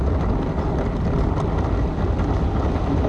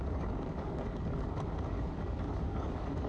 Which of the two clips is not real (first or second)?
second